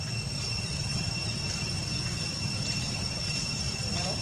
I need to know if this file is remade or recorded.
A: recorded